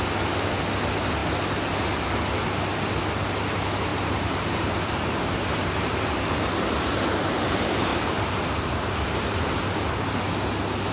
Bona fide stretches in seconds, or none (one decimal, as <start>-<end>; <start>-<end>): 0.0-3.9; 6.4-7.9; 9.6-10.9